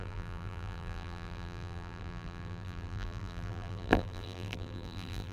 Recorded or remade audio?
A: remade